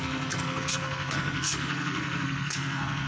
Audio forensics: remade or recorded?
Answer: remade